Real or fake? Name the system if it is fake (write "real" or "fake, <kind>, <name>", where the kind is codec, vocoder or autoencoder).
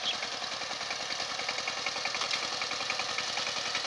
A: real